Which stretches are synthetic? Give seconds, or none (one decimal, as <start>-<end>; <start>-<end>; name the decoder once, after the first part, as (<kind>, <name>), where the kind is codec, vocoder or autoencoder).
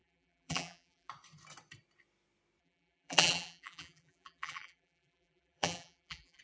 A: 0.0-1.1 (vocoder, BigVGAN v2); 2.6-6.4